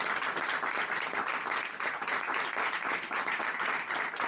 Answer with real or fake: real